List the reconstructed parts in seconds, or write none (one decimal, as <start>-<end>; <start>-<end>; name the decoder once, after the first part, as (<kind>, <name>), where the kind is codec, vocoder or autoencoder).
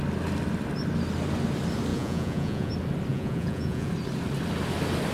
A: 1.9-2.7 (vocoder, Vocos); 3.1-3.9